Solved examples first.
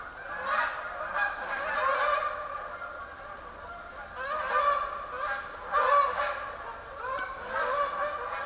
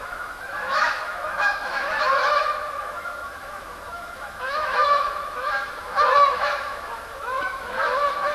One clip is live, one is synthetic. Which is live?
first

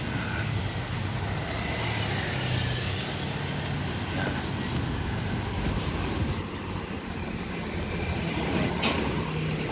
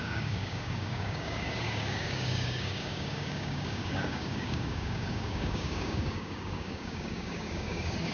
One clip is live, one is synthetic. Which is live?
first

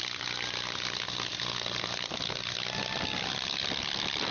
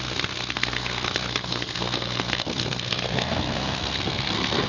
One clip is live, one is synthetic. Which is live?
first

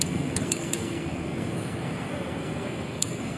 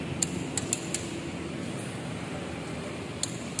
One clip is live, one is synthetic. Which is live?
second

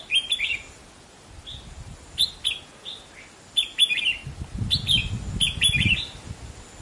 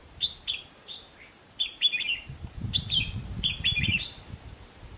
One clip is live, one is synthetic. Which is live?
first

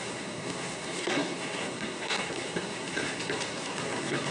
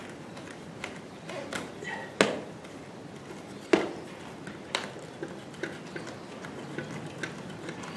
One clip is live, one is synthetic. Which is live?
second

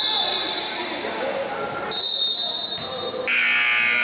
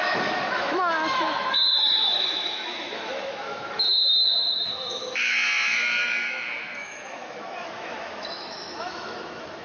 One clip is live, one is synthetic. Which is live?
first